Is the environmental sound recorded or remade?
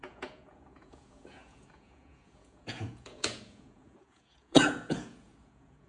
remade